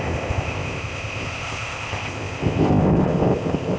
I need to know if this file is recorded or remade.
remade